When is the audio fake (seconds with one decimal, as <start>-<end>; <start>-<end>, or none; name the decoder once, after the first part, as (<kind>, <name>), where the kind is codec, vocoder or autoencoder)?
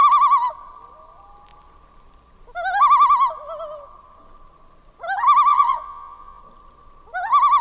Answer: 5.5-6.4 (vocoder, Vocos)